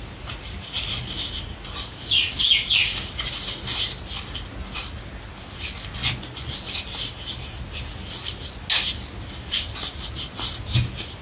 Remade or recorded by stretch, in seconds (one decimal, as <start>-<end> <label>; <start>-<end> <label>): 0.0-6.0 recorded; 6.0-6.5 remade; 6.5-11.2 recorded